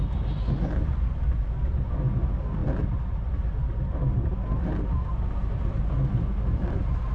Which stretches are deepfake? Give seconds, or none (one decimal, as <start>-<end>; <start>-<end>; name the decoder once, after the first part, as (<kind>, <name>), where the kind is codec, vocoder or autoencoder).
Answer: none